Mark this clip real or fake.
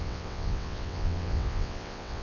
fake